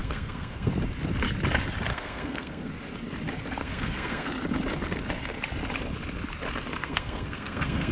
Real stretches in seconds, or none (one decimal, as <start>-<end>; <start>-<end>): 0.7-1.9; 2.7-3.6; 4.3-6.8